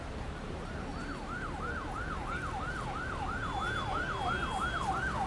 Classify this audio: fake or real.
real